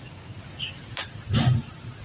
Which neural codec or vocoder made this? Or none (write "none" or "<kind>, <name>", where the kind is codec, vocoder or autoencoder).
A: none